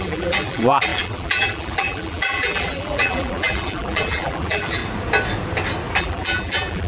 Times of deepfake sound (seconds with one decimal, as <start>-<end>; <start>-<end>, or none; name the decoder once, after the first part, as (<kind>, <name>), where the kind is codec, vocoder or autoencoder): 0.0-4.8 (vocoder, BigVGAN v2); 6.0-6.9